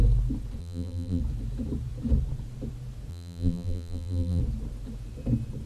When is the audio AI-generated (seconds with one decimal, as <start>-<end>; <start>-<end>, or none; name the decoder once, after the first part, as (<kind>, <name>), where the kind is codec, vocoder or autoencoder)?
0.6-1.2 (vocoder, BigVGAN v2); 3.1-4.4